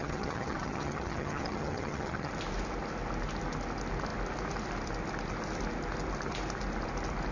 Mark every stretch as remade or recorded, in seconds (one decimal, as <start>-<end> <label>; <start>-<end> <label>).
0.0-2.3 remade; 2.3-7.3 recorded